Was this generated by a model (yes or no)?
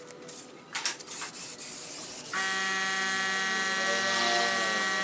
no